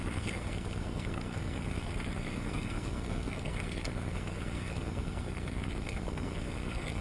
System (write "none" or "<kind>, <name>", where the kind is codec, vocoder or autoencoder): codec, SNAC